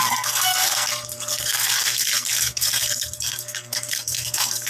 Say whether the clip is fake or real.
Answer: fake